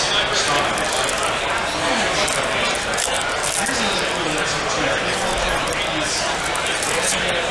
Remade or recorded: recorded